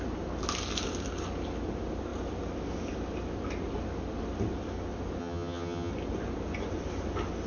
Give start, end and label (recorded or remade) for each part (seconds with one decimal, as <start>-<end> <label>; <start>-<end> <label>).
0.0-5.2 recorded; 5.2-5.9 remade; 5.9-7.5 recorded